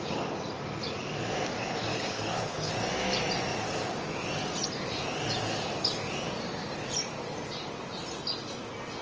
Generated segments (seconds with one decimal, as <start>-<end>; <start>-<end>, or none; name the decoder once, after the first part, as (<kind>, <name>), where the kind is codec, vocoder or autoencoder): 1.9-2.7 (codec, HILCodec)